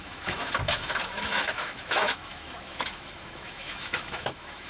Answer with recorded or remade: remade